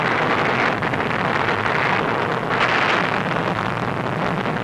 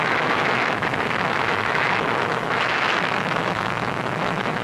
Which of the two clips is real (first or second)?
first